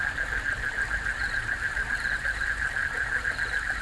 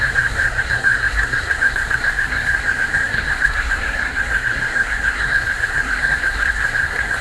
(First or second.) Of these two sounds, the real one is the first